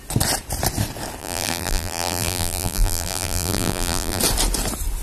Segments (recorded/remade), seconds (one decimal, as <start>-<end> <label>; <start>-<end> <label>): 0.0-1.2 recorded; 1.2-4.2 remade; 4.2-5.0 recorded